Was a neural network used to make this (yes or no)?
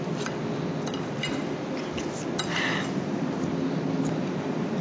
no